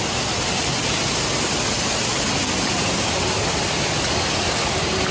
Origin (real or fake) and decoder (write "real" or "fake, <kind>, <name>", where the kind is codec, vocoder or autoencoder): real